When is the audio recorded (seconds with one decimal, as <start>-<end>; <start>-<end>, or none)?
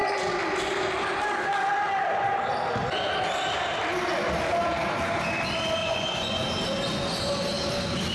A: 0.0-5.8; 6.4-8.1